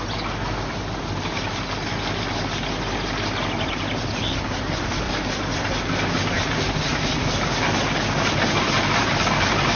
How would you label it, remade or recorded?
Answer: recorded